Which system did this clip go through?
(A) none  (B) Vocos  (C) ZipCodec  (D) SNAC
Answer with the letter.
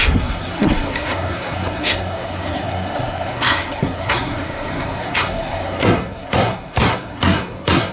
D